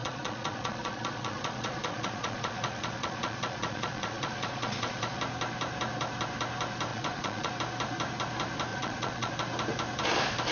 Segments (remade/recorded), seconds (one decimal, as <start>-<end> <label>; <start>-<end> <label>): 0.0-5.2 remade; 5.2-6.9 recorded; 6.9-7.5 remade; 7.5-8.7 recorded; 8.7-9.3 remade; 9.3-10.5 recorded